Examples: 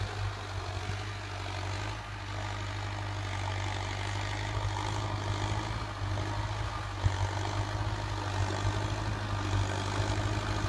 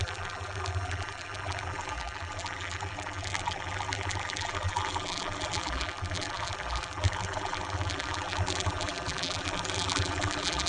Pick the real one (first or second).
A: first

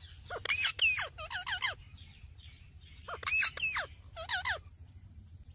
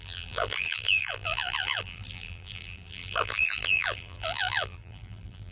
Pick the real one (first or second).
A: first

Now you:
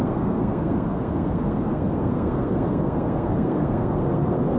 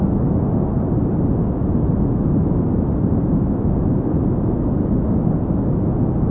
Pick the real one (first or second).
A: second